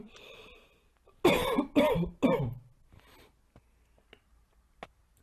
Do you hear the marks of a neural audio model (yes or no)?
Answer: no